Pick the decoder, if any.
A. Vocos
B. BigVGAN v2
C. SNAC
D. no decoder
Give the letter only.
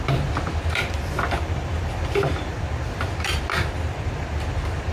B